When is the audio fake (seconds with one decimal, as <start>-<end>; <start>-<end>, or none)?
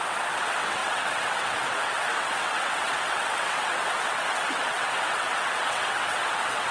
0.0-6.7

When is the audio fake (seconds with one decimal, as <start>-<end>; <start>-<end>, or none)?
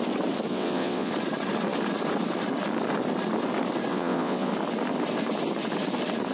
0.5-1.1; 3.9-4.5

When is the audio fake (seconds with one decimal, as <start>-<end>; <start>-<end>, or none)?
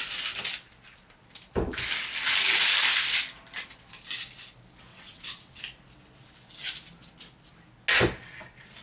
4.9-5.6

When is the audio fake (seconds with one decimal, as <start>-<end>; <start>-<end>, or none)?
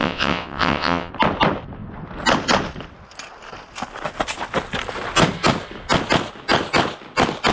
0.0-1.1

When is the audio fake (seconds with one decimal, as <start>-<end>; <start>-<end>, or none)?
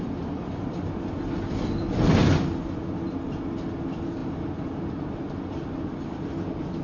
none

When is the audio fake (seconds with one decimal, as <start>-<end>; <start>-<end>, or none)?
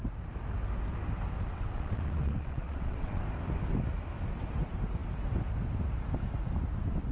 1.5-3.2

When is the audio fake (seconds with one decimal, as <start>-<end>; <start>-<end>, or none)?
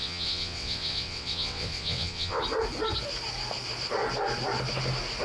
0.0-2.4